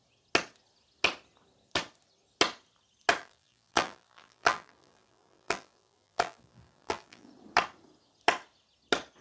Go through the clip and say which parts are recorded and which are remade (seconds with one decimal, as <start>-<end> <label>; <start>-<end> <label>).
0.0-3.2 recorded; 3.2-7.3 remade; 7.3-9.2 recorded